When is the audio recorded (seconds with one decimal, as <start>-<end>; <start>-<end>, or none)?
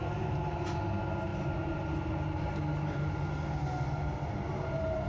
0.0-5.1